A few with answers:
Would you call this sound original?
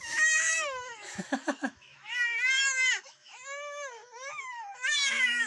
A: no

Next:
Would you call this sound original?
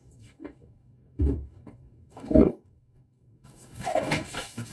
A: no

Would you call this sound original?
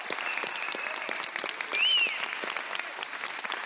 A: yes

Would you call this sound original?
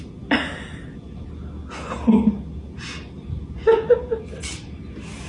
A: yes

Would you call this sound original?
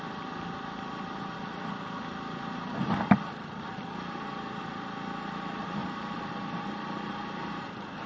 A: yes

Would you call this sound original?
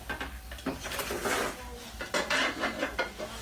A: yes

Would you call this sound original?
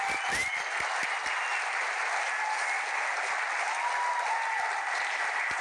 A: yes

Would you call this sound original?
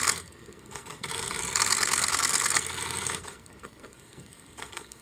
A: no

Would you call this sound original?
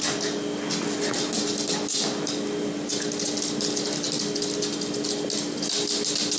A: yes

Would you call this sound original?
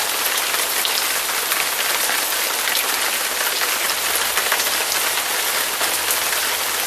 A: yes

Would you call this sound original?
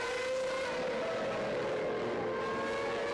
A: yes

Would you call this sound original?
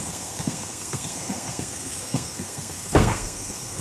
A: no